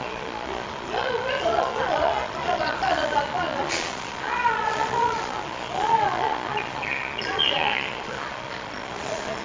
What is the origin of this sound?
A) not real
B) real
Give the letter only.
A